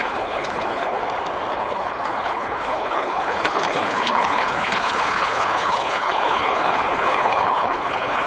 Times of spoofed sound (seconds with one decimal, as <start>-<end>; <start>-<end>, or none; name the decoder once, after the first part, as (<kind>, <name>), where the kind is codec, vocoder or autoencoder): 0.0-1.0 (codec, HILCodec); 1.5-8.3